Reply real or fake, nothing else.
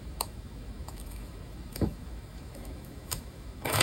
fake